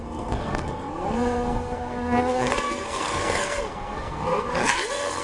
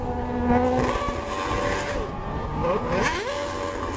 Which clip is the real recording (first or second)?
second